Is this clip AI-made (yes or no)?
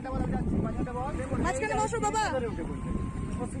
no